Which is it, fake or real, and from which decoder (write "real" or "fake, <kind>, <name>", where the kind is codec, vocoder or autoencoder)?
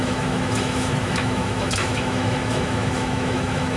fake, autoencoder, DAC-VAE